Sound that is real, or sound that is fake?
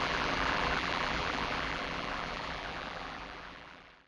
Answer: fake